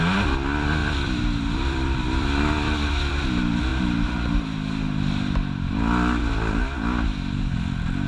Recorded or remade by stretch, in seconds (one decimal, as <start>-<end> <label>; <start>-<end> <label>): 0.0-0.8 recorded; 0.8-3.1 remade; 3.1-3.7 recorded; 3.7-6.2 remade; 6.2-8.1 recorded